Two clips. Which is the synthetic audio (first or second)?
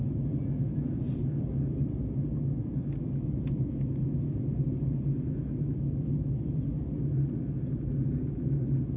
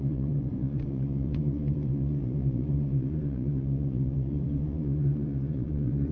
second